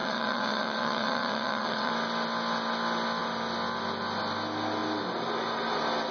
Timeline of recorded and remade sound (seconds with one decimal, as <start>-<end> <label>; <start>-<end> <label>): 0.0-1.9 remade; 1.9-6.1 recorded